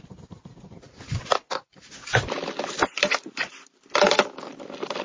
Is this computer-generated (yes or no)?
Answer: no